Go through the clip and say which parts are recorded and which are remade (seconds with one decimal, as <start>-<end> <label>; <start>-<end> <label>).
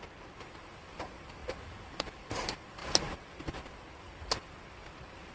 0.0-5.3 recorded